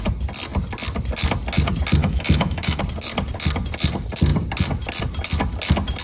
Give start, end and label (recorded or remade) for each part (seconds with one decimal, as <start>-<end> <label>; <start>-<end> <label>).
0.0-2.0 recorded; 2.0-2.8 remade; 2.8-6.0 recorded